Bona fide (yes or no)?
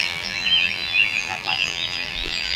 no